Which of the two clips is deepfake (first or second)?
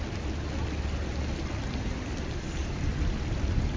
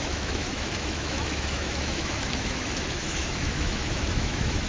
second